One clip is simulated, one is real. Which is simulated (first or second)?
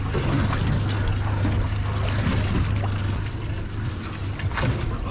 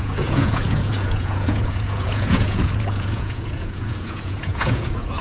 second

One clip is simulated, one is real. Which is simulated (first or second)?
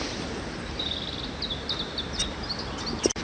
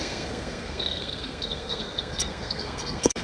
second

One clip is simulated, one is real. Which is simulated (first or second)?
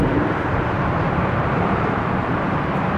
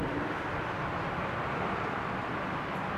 first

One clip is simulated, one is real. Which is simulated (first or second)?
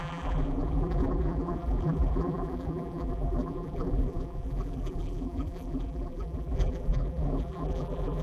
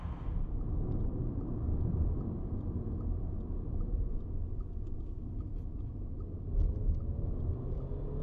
first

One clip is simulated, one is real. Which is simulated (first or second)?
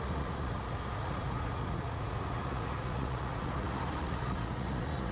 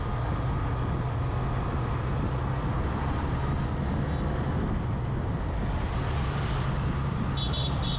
first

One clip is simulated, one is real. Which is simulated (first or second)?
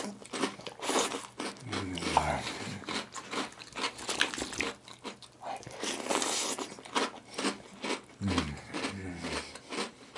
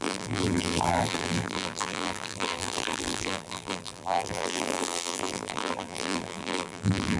second